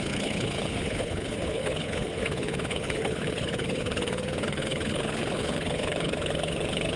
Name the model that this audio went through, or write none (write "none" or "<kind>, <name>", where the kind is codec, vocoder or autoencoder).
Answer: codec, HILCodec